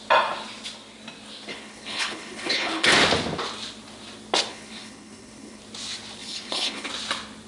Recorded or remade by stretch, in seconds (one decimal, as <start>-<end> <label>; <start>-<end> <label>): 0.0-1.5 recorded; 1.5-2.9 remade; 2.9-4.5 recorded; 4.5-5.6 remade; 5.6-6.2 recorded; 6.2-6.9 remade; 6.9-7.5 recorded